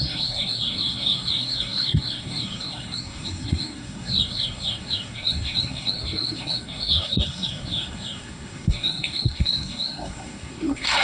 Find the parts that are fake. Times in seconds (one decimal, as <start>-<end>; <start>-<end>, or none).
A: 0.0-11.0